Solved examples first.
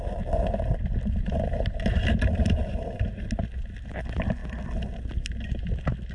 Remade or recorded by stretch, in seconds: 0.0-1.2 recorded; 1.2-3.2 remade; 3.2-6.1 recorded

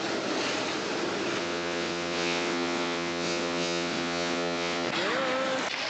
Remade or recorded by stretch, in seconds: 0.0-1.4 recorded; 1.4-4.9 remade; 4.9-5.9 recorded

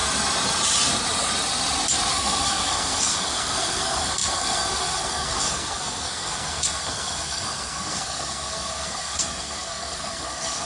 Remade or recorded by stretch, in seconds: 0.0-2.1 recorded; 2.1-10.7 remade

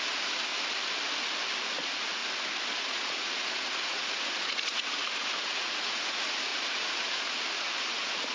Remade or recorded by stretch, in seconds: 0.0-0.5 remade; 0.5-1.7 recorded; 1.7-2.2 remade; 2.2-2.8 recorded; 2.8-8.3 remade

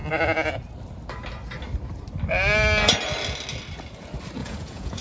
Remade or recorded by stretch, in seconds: 0.0-4.4 recorded; 4.4-5.0 remade